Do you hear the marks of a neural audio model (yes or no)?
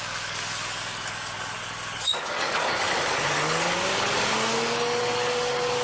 yes